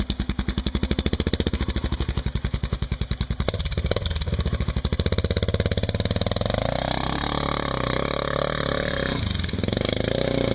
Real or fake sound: real